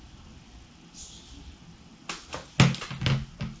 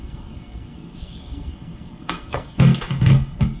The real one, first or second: first